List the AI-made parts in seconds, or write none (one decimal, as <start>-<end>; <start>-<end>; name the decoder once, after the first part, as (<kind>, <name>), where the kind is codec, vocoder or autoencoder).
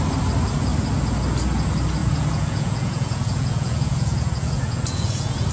2.0-5.5 (vocoder, Vocos)